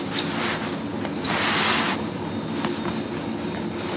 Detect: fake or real real